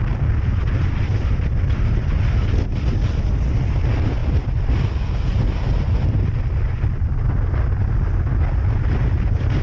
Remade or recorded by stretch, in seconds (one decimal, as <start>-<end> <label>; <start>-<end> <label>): 0.0-9.6 recorded

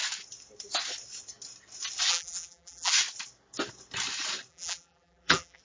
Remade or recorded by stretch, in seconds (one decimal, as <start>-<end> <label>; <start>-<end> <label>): 0.0-2.1 recorded; 2.1-2.9 remade; 2.9-4.5 recorded; 4.5-5.6 remade

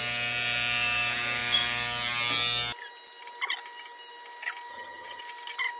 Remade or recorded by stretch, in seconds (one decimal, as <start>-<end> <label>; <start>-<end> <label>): 0.0-4.7 recorded; 4.7-5.2 remade; 5.2-5.8 recorded

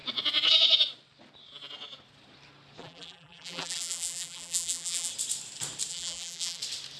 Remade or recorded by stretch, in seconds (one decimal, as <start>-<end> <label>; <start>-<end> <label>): 0.0-2.8 recorded; 2.8-5.1 remade; 5.1-5.9 recorded; 5.9-6.6 remade; 6.6-7.0 recorded

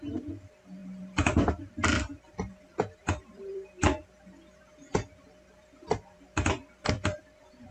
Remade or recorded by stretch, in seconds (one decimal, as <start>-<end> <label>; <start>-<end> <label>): 0.0-0.8 recorded; 0.8-1.5 remade; 1.5-1.9 recorded; 1.9-4.0 remade; 4.0-4.4 recorded; 4.4-7.7 remade

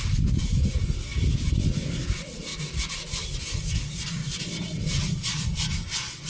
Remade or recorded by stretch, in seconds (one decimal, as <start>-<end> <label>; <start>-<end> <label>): 0.0-2.5 recorded; 2.5-3.2 remade; 3.2-6.3 recorded